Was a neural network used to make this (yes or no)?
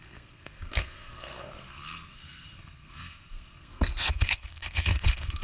yes